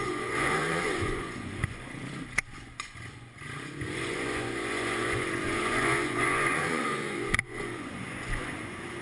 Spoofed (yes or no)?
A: yes